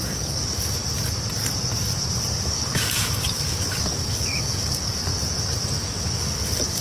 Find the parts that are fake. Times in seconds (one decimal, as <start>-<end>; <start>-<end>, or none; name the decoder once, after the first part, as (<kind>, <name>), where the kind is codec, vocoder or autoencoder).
0.0-0.8 (codec, DAC); 2.3-5.1; 6.2-6.8